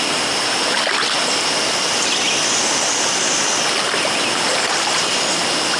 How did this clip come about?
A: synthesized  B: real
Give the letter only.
B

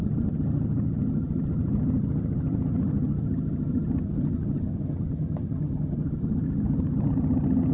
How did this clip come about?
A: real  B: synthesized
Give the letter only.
B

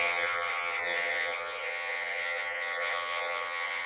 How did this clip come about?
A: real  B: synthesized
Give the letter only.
B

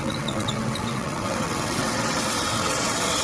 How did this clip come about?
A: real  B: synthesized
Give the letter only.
B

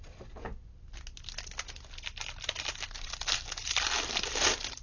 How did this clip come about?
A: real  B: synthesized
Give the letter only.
A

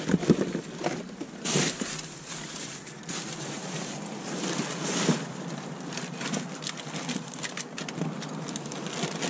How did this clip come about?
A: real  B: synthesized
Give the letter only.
B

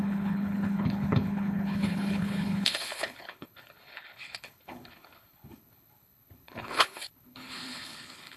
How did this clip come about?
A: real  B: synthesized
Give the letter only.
B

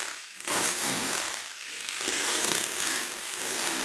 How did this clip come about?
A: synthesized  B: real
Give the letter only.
A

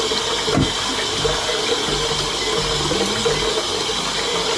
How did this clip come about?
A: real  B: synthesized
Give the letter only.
A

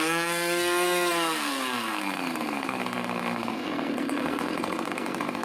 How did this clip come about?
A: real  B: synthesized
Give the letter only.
B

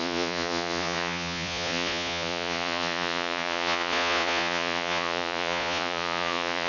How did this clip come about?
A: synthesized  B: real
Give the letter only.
A